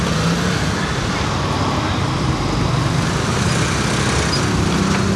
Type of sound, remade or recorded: recorded